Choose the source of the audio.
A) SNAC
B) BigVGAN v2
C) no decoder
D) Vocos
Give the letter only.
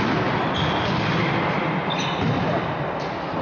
C